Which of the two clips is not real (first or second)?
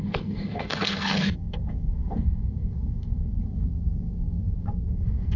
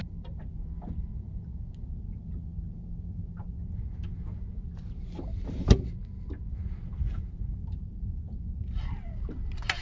first